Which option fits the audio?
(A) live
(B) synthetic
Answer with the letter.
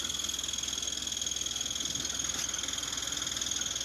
A